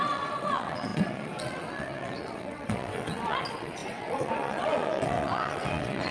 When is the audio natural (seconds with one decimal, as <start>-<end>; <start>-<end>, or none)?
none